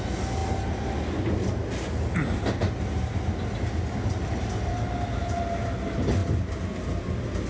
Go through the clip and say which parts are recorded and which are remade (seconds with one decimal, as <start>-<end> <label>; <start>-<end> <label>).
0.0-7.5 recorded